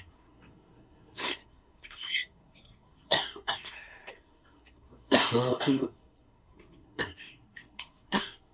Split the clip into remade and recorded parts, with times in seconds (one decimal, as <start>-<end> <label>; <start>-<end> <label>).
0.0-8.5 remade